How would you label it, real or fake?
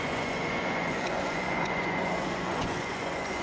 fake